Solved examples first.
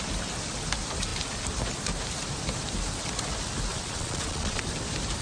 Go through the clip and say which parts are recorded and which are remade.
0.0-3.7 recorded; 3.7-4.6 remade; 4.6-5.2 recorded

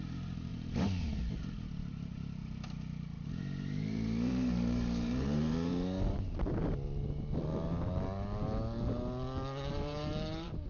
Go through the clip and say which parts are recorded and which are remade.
0.0-2.4 remade; 2.4-3.3 recorded; 3.3-5.7 remade; 5.7-9.7 recorded; 9.7-10.7 remade

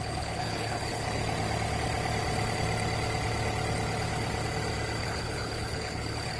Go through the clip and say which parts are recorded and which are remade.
0.0-1.2 remade; 1.2-5.0 recorded; 5.0-6.4 remade

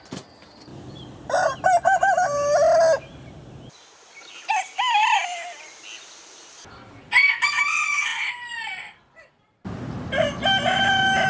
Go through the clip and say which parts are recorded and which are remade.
0.0-11.3 recorded

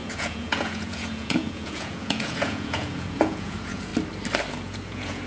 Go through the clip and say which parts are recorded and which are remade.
0.0-3.9 remade; 3.9-4.5 recorded; 4.5-5.3 remade

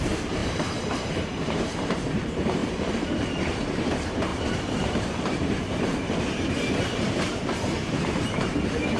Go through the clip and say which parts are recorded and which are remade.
0.0-2.6 remade; 2.6-3.4 recorded; 3.4-9.0 remade

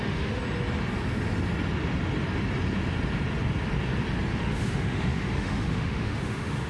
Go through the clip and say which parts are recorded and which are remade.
0.0-0.4 remade; 0.4-4.4 recorded; 4.4-6.7 remade